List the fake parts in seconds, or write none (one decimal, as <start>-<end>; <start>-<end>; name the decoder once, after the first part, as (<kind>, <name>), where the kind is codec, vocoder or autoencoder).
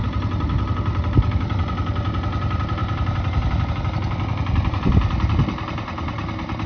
none